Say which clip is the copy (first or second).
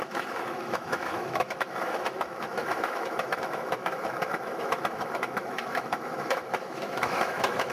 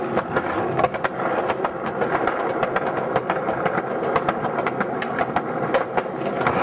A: first